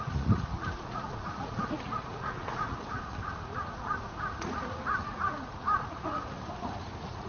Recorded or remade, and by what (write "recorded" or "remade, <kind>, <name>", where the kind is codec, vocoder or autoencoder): remade, vocoder, Vocos